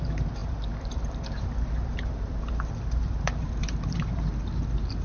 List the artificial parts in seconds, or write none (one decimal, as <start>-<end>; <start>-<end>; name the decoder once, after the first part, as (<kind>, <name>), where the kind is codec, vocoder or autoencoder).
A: 0.0-5.0 (vocoder, BigVGAN v2)